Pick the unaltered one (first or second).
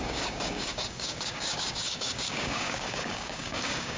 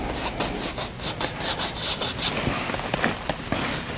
second